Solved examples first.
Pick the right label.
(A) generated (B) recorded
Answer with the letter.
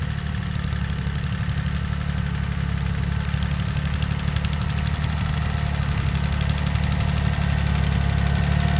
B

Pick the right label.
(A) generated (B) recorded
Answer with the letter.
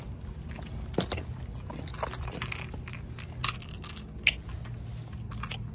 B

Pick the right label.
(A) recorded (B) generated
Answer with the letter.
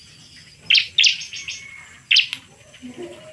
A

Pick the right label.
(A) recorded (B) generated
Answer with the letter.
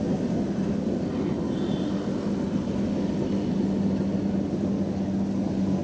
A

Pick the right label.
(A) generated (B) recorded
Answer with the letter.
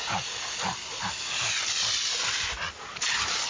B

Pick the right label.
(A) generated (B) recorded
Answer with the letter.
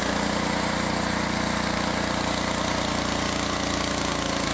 B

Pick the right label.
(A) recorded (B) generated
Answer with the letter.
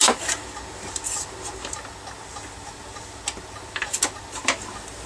A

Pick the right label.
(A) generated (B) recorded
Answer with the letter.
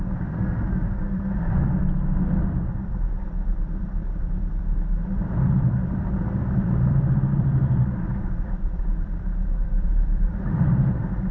A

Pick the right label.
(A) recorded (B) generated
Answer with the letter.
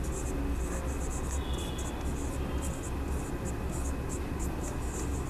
A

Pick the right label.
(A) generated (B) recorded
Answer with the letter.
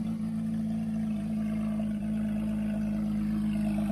B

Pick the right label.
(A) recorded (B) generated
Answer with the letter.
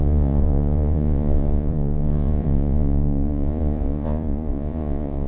B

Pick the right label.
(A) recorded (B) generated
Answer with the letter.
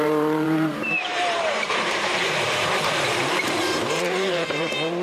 B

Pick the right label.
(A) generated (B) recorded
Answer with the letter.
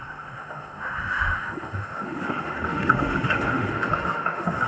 A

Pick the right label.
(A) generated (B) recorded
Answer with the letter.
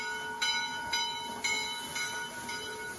B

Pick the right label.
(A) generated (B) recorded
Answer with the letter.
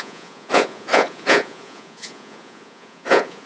A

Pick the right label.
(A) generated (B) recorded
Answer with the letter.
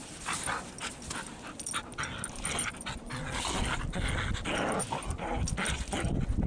B